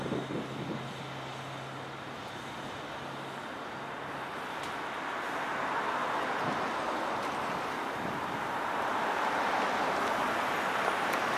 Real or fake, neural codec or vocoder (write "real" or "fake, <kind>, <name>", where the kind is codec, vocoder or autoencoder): real